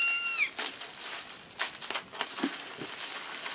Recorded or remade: recorded